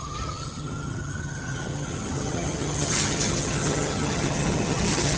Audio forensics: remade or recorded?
remade